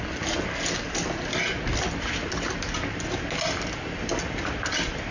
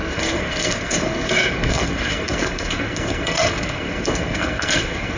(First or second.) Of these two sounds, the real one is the first